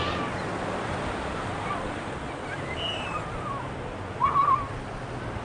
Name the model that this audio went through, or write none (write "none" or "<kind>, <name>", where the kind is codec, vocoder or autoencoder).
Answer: none